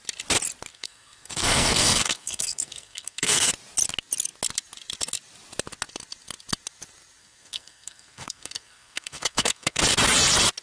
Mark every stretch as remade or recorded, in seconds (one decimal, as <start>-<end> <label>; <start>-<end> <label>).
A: 0.0-0.7 recorded; 0.7-3.5 remade; 3.5-7.2 recorded; 7.2-9.8 remade; 9.8-10.6 recorded